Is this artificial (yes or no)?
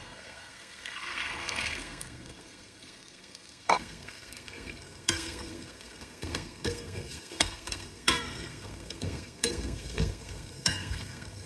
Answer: yes